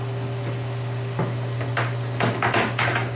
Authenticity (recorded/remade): recorded